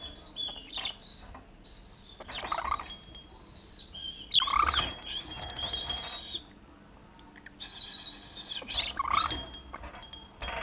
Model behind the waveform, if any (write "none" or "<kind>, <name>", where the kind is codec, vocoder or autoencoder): none